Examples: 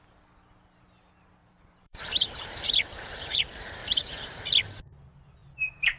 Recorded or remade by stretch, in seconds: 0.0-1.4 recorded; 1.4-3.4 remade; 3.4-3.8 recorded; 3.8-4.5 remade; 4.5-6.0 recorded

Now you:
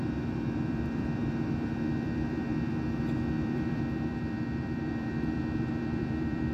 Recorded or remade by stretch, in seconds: 0.0-6.5 remade

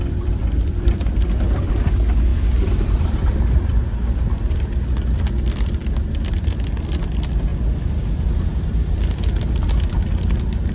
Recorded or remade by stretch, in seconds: 0.0-5.8 remade; 5.8-6.4 recorded; 6.4-7.5 remade; 7.5-8.6 recorded; 8.6-10.7 remade

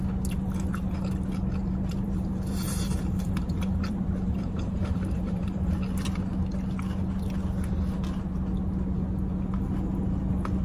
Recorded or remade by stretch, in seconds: 0.0-1.6 recorded; 1.6-5.8 remade; 5.8-10.6 recorded

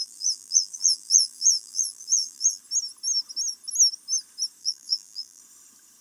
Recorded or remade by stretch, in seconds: 0.0-2.6 remade; 2.6-4.6 recorded; 4.6-5.4 remade; 5.4-6.0 recorded

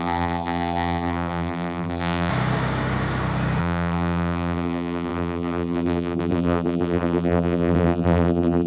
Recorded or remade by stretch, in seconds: 0.0-2.3 remade; 2.3-3.6 recorded; 3.6-8.7 remade